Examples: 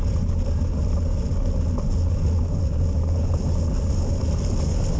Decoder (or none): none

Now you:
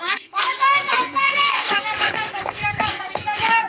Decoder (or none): codec, SNAC